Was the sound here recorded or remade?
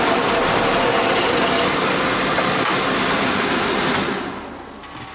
recorded